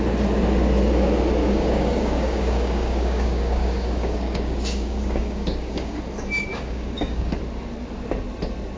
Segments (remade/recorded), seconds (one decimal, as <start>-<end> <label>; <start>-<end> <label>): 0.0-1.4 recorded; 1.4-6.0 remade; 6.0-6.5 recorded; 6.5-7.4 remade; 7.4-8.8 recorded